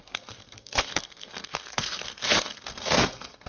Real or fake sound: fake